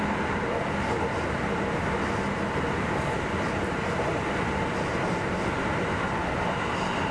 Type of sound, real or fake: real